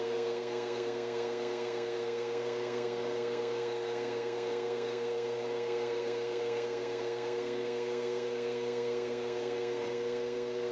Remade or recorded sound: remade